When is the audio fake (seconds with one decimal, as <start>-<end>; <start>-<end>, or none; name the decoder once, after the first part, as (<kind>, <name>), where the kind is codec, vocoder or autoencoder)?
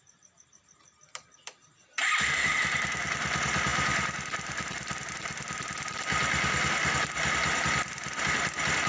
none